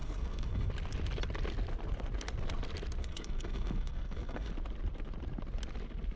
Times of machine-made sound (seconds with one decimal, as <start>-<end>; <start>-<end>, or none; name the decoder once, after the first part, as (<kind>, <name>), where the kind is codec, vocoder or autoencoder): 0.0-0.7 (codec, SNAC); 3.0-4.5